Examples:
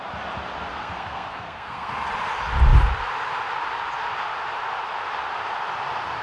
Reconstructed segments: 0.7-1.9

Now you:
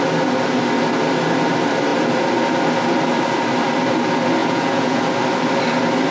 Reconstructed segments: 4.4-5.0

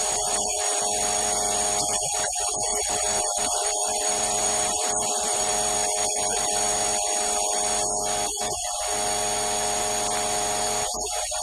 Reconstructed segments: 0.0-0.8; 2.7-5.5

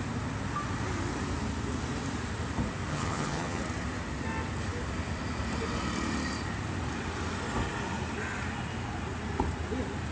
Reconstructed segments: 2.9-3.6

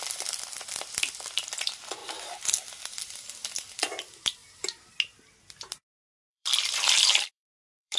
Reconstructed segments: 0.0-2.0; 3.0-3.4; 4.0-4.4; 5.8-8.0